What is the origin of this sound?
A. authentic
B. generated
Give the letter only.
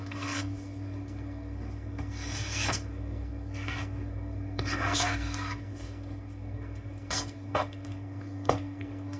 B